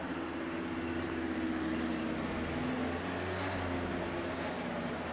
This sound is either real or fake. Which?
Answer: real